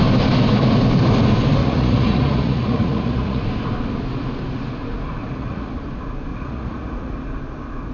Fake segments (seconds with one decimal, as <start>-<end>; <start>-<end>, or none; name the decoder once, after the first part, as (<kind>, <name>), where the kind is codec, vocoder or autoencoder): 1.6-3.4 (vocoder, Vocos); 5.2-5.7; 6.3-7.1